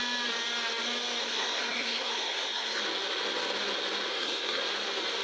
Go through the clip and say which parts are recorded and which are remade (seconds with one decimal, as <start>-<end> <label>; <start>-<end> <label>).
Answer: 0.0-1.2 recorded; 1.2-2.8 remade; 2.8-4.1 recorded; 4.1-4.6 remade; 4.6-5.2 recorded